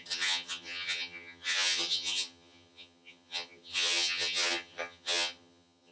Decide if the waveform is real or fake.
fake